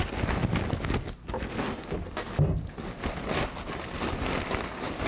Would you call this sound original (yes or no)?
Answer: yes